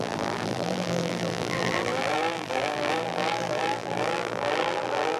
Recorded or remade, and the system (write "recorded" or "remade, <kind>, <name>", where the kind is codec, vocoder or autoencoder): remade, vocoder, BigVGAN v2